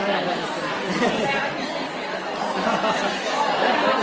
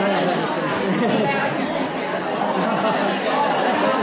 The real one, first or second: second